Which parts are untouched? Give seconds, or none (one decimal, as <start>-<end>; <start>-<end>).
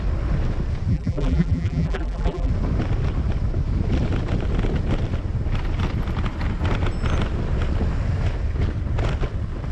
0.0-0.9; 2.5-9.7